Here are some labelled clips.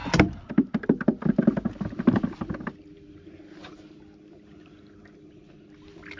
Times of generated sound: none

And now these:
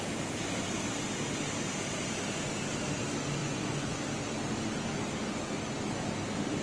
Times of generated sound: 3.4-4.0 (vocoder, Vocos)

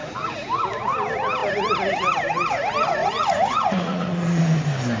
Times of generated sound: 3.0-4.4 (vocoder, Vocos)

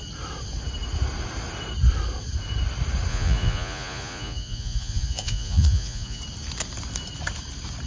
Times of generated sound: 3.1-6.2 (vocoder, Vocos)